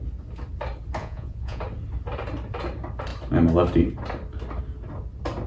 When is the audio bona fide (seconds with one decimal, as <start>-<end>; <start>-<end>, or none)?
0.0-1.0; 1.6-5.5